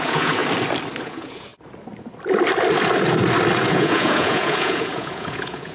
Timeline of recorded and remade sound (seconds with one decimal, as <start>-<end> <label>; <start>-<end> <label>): 0.0-0.4 remade; 0.4-1.0 recorded; 1.0-1.5 remade; 1.5-3.7 recorded; 3.7-5.7 remade